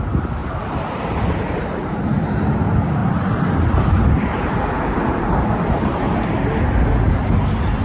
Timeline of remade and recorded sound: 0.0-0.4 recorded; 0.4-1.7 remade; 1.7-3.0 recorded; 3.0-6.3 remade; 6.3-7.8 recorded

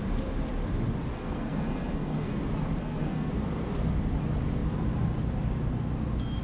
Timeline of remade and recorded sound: 0.0-1.1 recorded; 1.1-2.4 remade; 2.4-2.8 recorded; 2.8-3.3 remade; 3.3-6.4 recorded